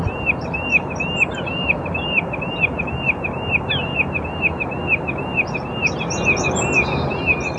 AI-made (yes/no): no